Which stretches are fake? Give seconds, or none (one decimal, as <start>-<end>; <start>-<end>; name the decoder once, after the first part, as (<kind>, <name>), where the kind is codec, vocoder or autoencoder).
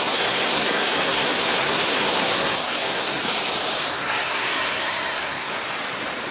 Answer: 0.0-3.2 (codec, SNAC); 3.9-5.6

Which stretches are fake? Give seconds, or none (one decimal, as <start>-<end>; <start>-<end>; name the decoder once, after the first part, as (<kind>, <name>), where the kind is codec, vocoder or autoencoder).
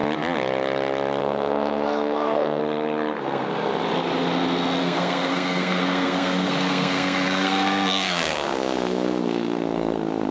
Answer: 1.2-2.6 (codec, SNAC); 3.2-3.7; 4.8-10.3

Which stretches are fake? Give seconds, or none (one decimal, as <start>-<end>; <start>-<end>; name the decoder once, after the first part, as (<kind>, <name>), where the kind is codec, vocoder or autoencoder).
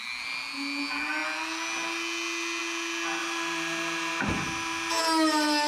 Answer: 3.2-5.0 (vocoder, BigVGAN v2)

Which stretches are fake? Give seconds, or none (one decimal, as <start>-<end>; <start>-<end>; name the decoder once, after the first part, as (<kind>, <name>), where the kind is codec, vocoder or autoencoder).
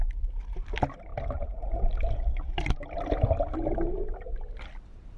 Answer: none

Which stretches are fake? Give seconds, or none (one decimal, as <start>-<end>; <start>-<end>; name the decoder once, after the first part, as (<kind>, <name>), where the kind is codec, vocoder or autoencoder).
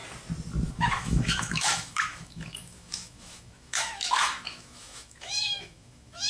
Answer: 0.7-6.3 (autoencoder, DAC-VAE)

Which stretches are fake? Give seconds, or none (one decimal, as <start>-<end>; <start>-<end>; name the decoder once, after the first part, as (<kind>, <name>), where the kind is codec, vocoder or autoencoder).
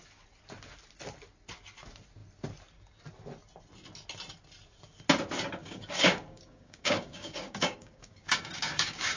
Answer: 5.6-9.2 (codec, DAC)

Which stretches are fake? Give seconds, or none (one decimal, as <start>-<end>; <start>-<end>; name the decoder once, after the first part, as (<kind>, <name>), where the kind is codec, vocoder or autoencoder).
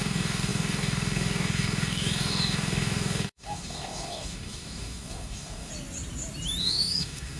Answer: 0.0-5.7 (codec, DAC); 6.6-7.4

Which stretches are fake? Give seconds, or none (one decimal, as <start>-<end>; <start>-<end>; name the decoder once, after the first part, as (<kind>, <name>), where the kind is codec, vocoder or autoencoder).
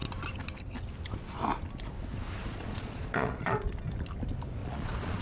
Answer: 2.4-3.7 (vocoder, Vocos); 4.6-5.2